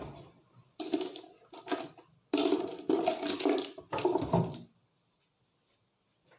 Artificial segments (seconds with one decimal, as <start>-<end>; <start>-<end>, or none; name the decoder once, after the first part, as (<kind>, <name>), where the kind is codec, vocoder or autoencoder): none